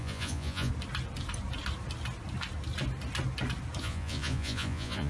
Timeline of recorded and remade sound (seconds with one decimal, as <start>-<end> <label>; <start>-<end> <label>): 0.0-0.7 remade; 0.7-3.8 recorded; 3.8-5.1 remade